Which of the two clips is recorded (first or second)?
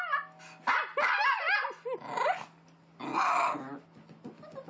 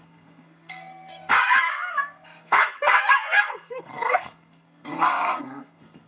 first